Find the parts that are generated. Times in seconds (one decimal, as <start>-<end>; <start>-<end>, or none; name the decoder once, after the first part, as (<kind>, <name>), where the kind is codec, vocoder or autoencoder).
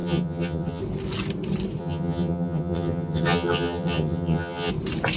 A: 0.0-0.8 (vocoder, HiFi-GAN); 1.8-4.7